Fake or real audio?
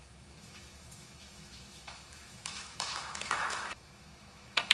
fake